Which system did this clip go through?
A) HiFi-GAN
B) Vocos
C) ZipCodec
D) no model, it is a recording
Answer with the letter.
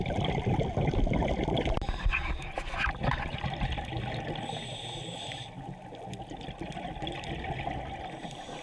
D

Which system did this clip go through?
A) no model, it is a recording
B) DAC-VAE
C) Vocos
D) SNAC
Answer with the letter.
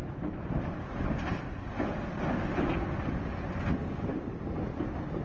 A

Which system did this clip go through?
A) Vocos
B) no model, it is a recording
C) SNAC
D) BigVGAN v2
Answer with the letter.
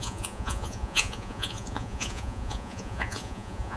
A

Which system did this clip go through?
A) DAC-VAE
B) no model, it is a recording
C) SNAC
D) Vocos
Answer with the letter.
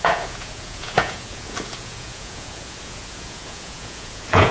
D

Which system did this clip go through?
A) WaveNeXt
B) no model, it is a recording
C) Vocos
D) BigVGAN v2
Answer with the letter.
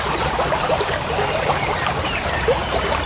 B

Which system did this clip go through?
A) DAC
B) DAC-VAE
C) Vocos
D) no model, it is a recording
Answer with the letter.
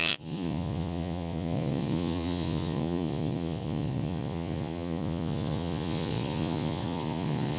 C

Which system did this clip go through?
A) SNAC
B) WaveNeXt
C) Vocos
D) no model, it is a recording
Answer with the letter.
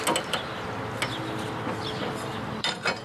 D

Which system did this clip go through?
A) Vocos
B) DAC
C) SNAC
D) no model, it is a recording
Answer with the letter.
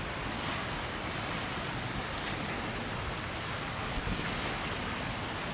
D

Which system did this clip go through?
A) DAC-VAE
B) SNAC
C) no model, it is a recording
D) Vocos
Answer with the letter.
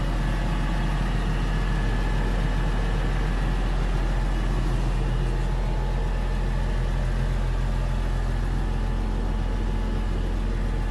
C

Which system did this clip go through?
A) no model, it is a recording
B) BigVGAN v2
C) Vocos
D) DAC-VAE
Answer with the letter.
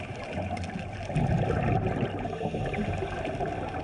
A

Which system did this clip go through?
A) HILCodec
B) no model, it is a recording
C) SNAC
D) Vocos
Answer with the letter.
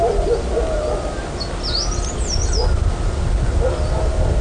B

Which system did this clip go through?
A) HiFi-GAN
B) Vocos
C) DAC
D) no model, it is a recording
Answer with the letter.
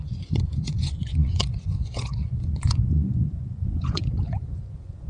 B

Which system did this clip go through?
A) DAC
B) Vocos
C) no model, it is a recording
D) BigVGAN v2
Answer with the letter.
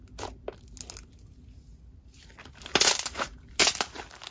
C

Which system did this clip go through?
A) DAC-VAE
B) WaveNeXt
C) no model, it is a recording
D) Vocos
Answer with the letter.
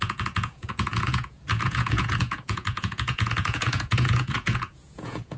D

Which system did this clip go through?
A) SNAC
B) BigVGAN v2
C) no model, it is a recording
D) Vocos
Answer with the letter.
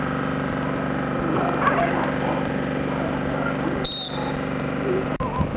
C